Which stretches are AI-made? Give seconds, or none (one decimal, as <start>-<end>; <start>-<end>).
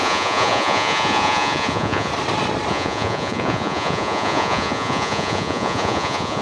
0.0-2.1; 2.7-6.4